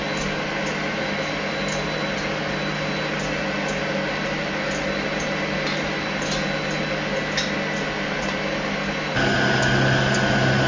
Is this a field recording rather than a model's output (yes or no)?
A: yes